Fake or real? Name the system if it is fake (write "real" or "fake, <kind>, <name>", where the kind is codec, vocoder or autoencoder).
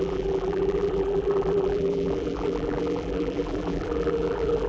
fake, vocoder, BigVGAN v2